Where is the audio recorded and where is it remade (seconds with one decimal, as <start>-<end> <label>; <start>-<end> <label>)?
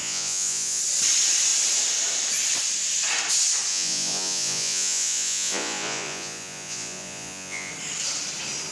0.0-0.8 remade; 0.8-3.7 recorded; 3.7-7.7 remade; 7.7-8.7 recorded